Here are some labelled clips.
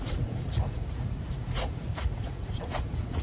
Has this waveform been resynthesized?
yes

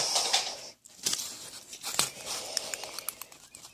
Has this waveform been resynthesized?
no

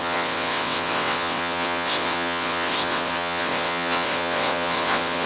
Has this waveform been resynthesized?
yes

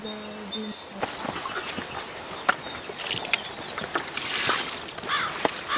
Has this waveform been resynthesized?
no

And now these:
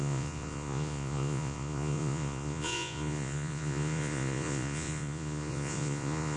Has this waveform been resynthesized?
yes